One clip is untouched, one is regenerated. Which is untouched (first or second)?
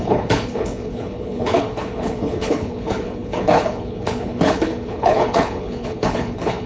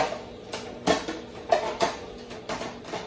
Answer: second